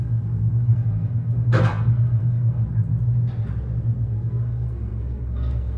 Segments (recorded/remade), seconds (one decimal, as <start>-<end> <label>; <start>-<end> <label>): 0.0-2.9 remade; 2.9-3.8 recorded; 3.8-5.8 remade